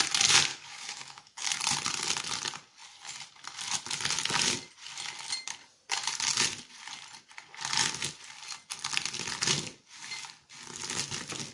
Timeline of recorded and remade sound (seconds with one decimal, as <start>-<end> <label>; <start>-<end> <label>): 0.0-0.5 recorded; 0.5-1.6 remade; 1.6-11.5 recorded